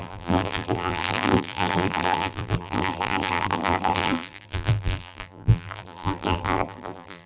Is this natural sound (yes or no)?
no